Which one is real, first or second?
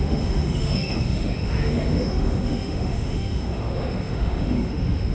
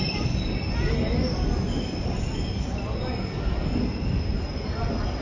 second